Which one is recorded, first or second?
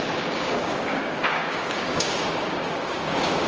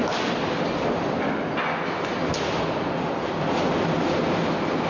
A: second